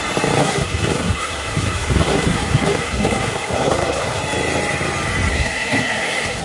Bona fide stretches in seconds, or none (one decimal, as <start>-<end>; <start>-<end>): 0.0-0.4; 4.2-5.3